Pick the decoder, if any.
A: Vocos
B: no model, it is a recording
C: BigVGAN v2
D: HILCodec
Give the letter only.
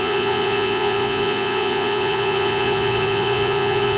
A